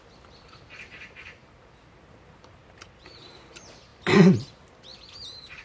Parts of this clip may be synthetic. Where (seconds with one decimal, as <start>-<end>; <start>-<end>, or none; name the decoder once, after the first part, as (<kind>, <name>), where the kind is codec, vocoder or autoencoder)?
none